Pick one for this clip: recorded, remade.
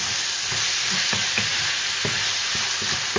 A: recorded